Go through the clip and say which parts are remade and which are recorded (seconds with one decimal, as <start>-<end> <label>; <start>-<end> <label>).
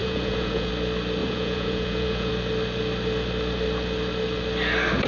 0.0-0.7 remade; 0.7-1.2 recorded; 1.2-2.3 remade; 2.3-5.1 recorded